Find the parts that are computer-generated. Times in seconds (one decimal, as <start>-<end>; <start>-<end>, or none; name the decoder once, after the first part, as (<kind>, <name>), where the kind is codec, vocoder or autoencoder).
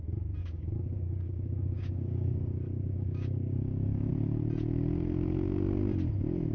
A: 0.4-4.1 (codec, DAC)